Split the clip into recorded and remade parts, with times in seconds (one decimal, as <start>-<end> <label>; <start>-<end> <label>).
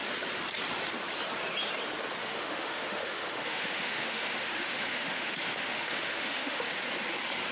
0.0-2.2 recorded; 2.2-6.7 remade; 6.7-7.5 recorded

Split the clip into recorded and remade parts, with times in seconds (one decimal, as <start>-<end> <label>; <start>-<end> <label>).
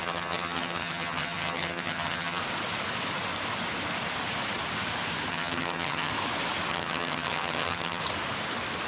0.0-2.4 remade; 2.4-5.3 recorded; 5.3-6.1 remade; 6.1-6.7 recorded; 6.7-8.0 remade; 8.0-8.9 recorded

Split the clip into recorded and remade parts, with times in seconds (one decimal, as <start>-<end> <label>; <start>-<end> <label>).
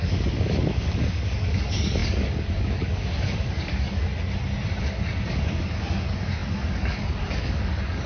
0.0-4.1 remade; 4.1-4.8 recorded; 4.8-8.1 remade